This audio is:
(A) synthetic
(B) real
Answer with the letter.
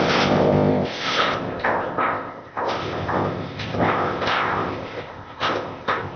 A